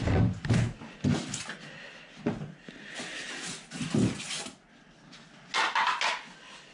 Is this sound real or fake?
real